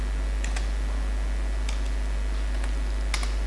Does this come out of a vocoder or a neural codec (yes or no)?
no